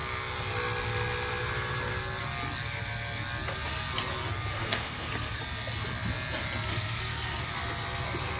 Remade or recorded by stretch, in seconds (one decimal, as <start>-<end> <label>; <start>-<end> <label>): 0.0-4.5 recorded; 4.5-5.4 remade; 5.4-6.7 recorded; 6.7-7.5 remade; 7.5-8.4 recorded